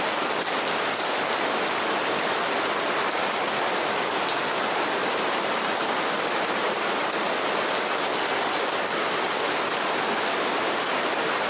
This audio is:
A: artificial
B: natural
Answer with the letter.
B